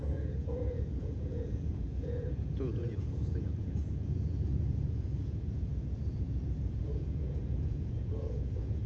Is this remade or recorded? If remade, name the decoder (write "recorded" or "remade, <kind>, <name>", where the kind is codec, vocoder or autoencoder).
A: remade, vocoder, Vocos